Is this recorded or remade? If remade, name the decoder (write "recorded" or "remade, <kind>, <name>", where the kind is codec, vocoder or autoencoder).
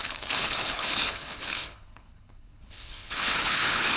remade, codec, HILCodec